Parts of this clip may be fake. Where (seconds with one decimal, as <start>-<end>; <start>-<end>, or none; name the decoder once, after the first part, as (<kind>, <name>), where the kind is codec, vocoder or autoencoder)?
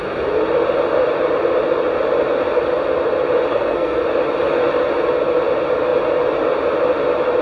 3.5-4.0 (codec, SNAC)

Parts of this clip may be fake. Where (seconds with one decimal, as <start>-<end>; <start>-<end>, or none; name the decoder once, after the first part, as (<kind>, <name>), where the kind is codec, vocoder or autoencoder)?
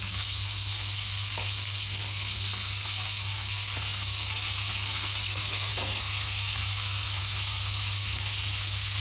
0.0-9.0 (codec, SNAC)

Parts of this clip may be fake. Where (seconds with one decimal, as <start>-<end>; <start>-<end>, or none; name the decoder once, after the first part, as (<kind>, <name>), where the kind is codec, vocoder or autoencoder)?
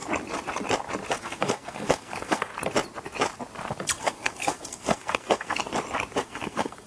1.2-2.5 (codec, SNAC); 4.0-5.6; 6.2-6.9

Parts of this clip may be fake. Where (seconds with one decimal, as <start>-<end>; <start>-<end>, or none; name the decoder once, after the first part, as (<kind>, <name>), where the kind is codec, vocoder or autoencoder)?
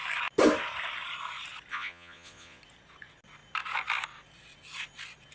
1.7-2.6 (vocoder, Vocos)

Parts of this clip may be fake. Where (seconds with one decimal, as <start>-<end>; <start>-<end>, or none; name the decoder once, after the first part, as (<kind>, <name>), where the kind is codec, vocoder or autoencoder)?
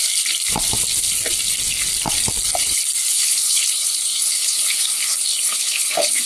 3.1-6.3 (codec, HILCodec)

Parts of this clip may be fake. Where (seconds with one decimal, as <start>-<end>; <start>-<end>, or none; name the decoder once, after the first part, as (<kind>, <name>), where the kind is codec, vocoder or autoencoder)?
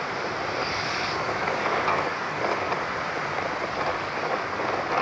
0.6-2.7 (codec, DAC); 3.9-4.6